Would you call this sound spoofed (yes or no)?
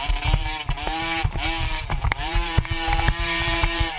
yes